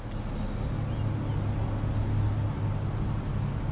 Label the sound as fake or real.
real